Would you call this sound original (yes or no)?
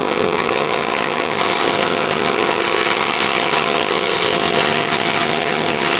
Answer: no